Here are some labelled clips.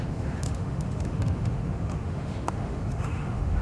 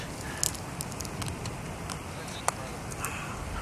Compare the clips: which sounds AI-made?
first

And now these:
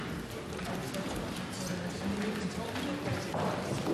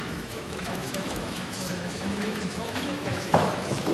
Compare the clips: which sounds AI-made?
second